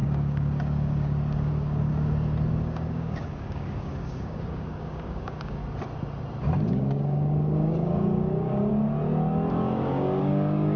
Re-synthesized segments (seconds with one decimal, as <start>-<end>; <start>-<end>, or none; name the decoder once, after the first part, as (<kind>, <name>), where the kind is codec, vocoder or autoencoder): 0.0-1.9 (codec, DAC); 2.5-5.6; 6.7-8.7; 9.5-10.8